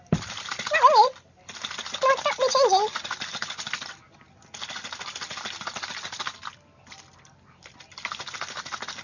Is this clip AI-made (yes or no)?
no